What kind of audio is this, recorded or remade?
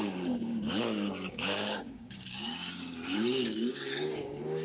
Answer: remade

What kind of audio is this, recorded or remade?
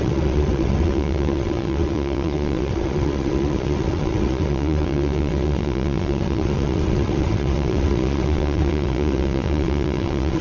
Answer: remade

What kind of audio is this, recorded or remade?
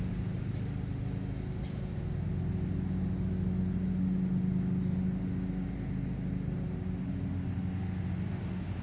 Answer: recorded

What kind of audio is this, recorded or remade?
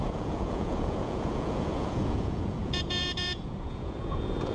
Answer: remade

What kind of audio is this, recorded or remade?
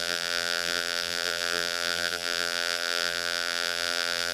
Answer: remade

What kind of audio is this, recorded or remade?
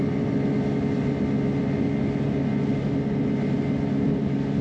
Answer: recorded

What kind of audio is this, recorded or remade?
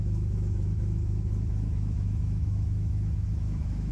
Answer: remade